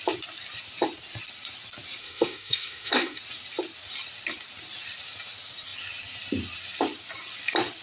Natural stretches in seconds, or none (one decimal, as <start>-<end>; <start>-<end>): 0.0-2.0; 3.2-7.8